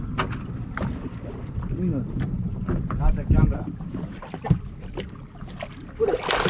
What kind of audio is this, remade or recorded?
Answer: recorded